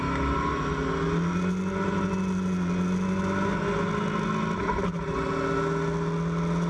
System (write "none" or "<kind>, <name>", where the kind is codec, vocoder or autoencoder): none